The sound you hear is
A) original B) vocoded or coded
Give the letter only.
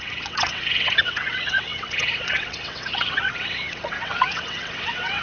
B